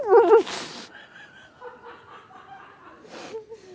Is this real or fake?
real